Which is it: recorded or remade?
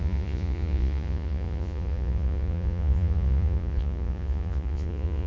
remade